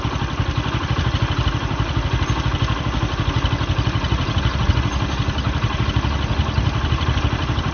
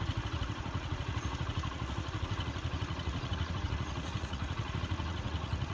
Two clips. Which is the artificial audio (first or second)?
second